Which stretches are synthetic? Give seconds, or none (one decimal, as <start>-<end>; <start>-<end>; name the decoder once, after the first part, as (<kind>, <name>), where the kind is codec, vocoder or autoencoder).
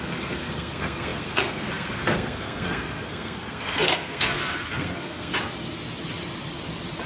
0.0-5.3 (codec, SNAC)